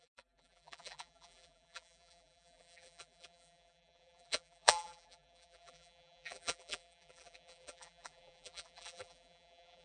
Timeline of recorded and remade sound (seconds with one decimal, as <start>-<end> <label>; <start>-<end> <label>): 0.0-9.8 remade

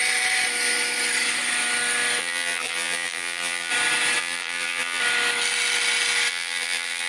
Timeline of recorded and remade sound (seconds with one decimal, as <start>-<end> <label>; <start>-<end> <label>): 0.0-2.2 recorded; 2.2-3.7 remade; 3.7-4.2 recorded; 4.2-5.0 remade; 5.0-6.3 recorded; 6.3-7.1 remade

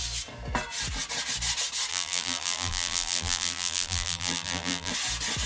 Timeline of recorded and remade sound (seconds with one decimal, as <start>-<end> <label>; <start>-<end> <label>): 0.0-1.9 recorded; 1.9-4.9 remade; 4.9-5.5 recorded

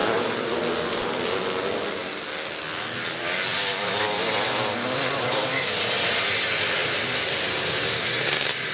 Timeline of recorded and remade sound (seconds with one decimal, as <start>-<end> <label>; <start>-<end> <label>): 0.0-0.6 remade; 0.6-3.5 recorded; 3.5-5.6 remade; 5.6-6.8 recorded; 6.8-8.1 remade; 8.1-8.7 recorded